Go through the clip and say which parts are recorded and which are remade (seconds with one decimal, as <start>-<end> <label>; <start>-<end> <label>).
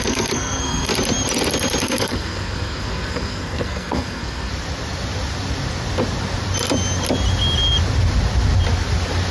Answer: 0.0-0.9 remade; 0.9-1.8 recorded; 1.8-4.5 remade; 4.5-9.3 recorded